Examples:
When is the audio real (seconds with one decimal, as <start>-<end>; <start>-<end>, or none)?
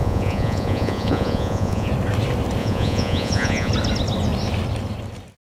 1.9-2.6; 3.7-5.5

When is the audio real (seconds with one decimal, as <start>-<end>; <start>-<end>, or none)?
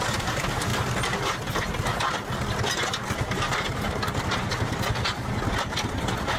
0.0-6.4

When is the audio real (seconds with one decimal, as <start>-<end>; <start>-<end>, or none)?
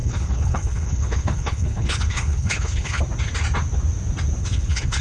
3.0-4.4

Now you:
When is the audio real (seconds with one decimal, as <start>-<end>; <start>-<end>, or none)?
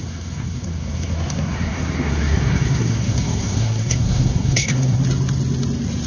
5.0-6.1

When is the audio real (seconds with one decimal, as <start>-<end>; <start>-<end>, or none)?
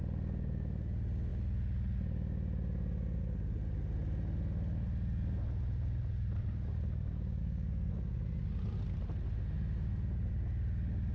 0.0-7.4; 7.9-11.1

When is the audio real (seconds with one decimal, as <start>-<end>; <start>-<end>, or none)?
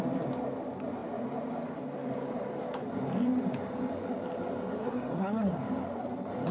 0.0-4.8; 5.5-6.5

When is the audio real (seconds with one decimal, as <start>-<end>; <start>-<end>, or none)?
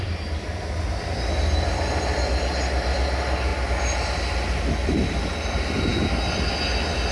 0.0-7.1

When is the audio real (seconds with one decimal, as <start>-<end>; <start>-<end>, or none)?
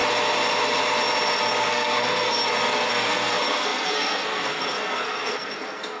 0.0-1.7; 2.4-2.9